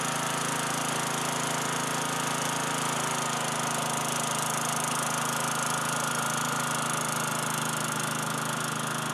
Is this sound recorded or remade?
recorded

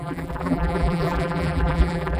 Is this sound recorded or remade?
remade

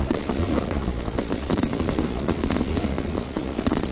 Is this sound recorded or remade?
remade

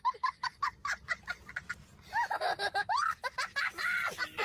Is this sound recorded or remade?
recorded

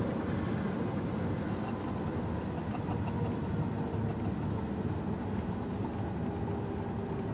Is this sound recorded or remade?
recorded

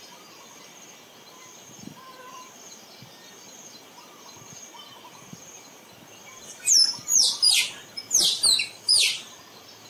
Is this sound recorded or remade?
recorded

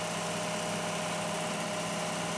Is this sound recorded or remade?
recorded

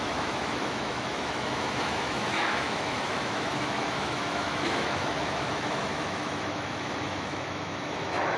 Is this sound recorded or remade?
remade